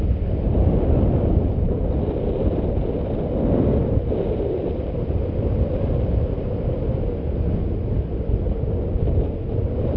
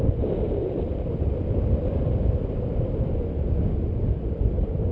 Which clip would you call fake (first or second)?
second